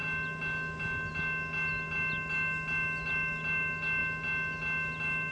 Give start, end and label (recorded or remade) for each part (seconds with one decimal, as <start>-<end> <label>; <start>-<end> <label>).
0.0-5.3 recorded